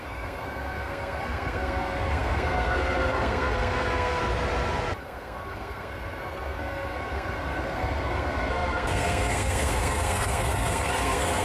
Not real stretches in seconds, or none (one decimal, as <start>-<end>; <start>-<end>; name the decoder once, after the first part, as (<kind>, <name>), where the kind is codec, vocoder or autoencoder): 0.0-4.2 (codec, SNAC); 5.0-11.4